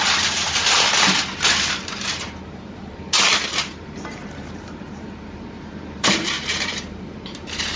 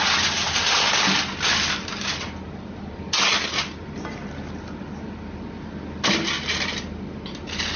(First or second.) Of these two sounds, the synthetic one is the first